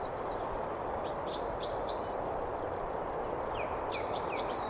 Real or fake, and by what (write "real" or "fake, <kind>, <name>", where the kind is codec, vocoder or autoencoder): fake, vocoder, BigVGAN v2